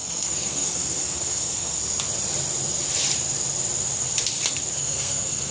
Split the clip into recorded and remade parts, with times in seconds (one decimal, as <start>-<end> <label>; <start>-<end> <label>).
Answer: 0.0-1.8 remade; 1.8-4.8 recorded; 4.8-5.5 remade